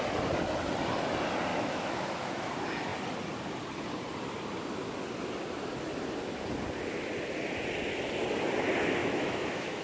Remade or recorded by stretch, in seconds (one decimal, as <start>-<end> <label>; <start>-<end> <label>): 0.0-1.5 recorded; 1.5-2.5 remade; 2.5-9.0 recorded; 9.0-9.8 remade